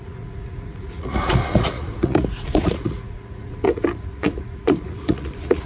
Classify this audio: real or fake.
fake